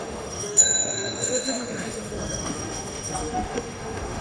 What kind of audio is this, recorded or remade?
remade